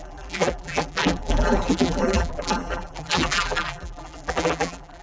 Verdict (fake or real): fake